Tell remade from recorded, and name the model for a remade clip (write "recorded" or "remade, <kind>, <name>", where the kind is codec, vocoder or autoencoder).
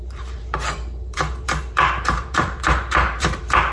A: remade, vocoder, BigVGAN v2